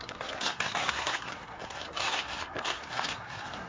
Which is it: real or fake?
fake